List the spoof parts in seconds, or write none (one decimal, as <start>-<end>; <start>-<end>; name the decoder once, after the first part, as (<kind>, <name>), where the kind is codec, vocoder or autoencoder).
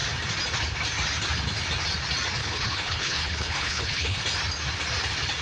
2.4-4.2 (codec, HILCodec)